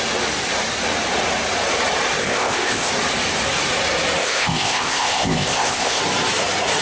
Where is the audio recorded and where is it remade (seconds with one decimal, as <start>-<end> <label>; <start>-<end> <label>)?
0.0-2.2 recorded; 2.2-2.9 remade; 2.9-4.2 recorded; 4.2-6.0 remade; 6.0-6.8 recorded